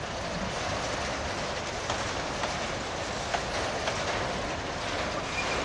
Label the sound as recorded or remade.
recorded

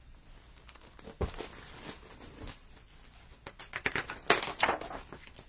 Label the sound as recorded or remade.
recorded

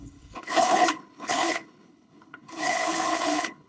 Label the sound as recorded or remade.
remade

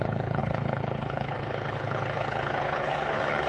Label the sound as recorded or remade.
remade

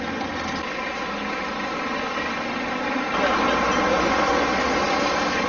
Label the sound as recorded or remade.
recorded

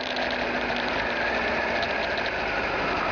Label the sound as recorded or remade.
recorded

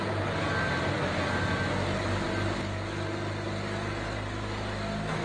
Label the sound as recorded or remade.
recorded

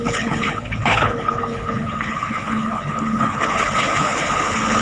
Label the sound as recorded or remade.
remade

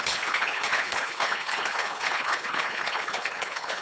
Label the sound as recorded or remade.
remade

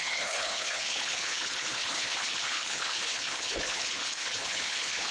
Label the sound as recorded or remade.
remade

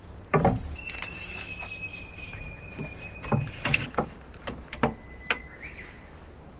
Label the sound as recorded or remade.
recorded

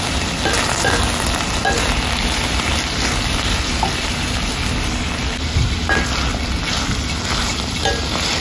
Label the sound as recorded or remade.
recorded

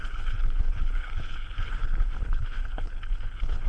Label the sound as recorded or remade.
remade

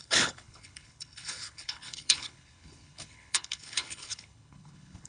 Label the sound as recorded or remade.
remade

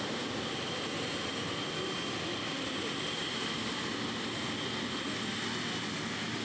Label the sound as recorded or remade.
recorded